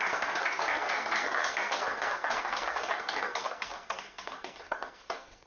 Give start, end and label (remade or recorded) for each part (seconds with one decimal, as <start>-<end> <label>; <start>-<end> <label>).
0.0-5.5 remade